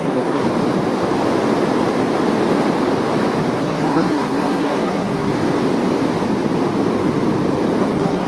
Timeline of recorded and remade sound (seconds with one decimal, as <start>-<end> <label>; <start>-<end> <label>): 0.0-0.4 remade; 0.4-3.6 recorded; 3.6-5.3 remade; 5.3-7.8 recorded; 7.8-8.3 remade

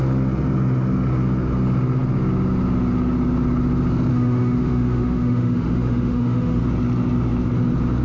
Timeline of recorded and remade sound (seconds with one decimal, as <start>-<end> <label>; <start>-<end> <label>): 0.0-4.1 recorded; 4.1-6.6 remade; 6.6-8.0 recorded

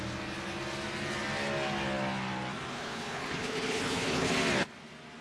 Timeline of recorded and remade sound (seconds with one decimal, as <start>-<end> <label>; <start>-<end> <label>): 0.0-2.7 recorded; 2.7-4.3 remade; 4.3-5.2 recorded